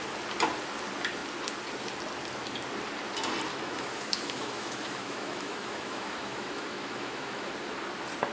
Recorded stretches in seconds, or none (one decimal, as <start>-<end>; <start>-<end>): 0.0-3.5; 7.5-8.3